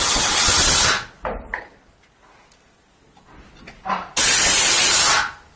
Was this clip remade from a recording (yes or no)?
no